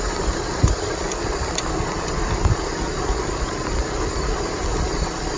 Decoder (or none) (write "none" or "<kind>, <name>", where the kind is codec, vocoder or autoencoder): none